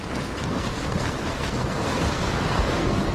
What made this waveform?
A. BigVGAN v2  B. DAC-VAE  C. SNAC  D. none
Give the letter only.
C